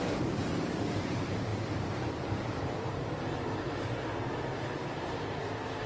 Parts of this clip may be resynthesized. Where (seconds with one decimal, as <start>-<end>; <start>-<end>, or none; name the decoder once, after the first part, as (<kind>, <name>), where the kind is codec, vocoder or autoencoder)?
0.0-5.9 (vocoder, BigVGAN v2)